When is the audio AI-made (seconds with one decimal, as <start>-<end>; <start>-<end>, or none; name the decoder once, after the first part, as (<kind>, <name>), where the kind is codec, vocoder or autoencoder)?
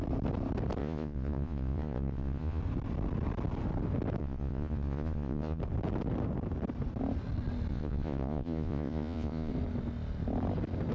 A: 0.8-2.6 (vocoder, Vocos); 4.2-5.6; 7.7-9.5